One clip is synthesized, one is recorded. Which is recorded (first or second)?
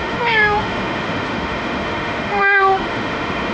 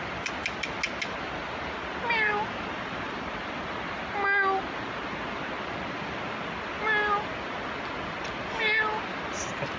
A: second